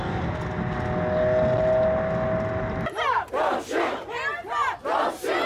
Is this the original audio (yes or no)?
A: yes